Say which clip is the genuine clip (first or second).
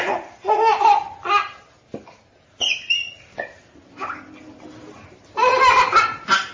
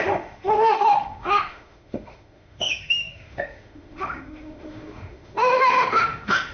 first